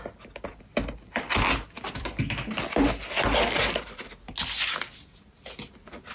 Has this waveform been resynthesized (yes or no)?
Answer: no